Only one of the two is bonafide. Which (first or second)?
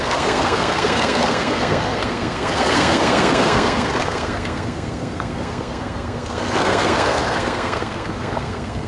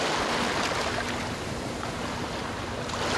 second